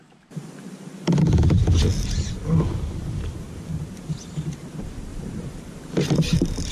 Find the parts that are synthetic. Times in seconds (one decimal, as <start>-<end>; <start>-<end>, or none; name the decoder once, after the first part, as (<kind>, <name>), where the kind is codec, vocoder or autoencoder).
0.0-6.7 (vocoder, BigVGAN v2)